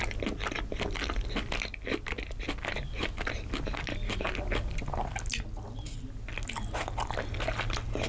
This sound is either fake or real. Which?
real